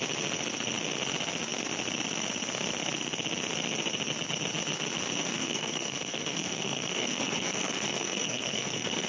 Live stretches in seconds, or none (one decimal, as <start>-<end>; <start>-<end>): 0.0-5.2